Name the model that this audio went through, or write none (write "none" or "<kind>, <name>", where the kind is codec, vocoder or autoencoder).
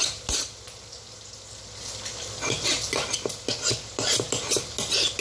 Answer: none